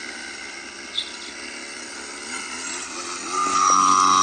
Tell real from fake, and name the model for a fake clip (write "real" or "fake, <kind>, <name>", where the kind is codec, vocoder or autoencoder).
real